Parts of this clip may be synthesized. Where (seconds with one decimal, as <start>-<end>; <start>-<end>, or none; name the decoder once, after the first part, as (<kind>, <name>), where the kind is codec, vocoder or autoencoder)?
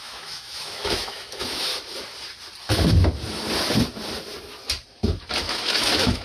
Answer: 0.0-1.7 (autoencoder, DAC-VAE); 5.4-6.2